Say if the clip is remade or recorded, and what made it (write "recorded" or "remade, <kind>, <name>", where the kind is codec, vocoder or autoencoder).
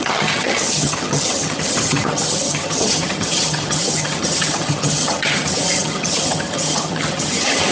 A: remade, vocoder, HiFi-GAN